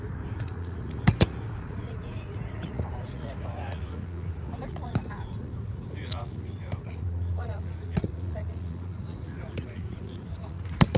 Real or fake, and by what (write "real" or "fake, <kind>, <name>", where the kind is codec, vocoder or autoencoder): fake, vocoder, Vocos